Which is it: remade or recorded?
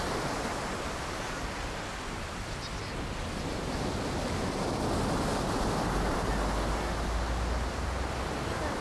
recorded